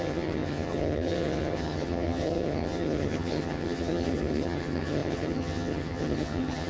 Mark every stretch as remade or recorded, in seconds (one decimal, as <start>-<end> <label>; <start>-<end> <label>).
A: 0.0-6.7 remade